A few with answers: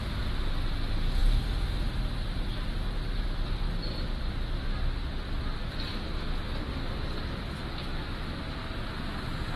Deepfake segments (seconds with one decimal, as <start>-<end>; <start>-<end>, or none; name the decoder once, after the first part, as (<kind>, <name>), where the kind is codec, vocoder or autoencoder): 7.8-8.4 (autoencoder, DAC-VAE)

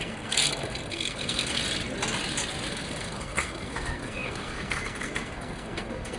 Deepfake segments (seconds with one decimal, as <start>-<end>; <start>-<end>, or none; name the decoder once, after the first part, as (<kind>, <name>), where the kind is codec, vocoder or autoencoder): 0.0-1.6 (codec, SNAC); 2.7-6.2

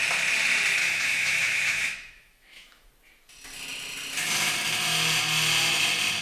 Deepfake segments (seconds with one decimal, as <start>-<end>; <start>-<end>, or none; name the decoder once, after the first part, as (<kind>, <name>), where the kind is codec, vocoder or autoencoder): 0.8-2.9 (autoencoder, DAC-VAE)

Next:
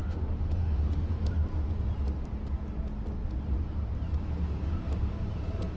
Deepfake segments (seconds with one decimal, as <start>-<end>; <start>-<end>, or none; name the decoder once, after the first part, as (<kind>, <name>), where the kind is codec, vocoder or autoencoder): 0.0-1.3 (autoencoder, DAC-VAE)

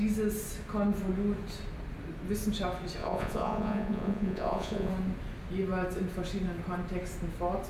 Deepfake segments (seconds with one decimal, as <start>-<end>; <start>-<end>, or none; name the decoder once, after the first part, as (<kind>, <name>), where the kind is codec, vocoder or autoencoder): 3.0-4.9 (vocoder, Vocos)

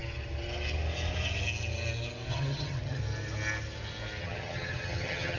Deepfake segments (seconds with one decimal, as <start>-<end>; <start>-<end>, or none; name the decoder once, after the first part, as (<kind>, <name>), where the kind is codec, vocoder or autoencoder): 2.3-3.0 (vocoder, HiFi-GAN); 4.2-5.4